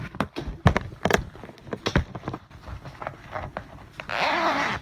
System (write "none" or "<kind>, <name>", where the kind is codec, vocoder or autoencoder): none